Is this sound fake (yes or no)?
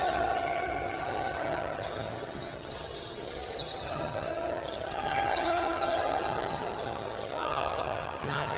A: yes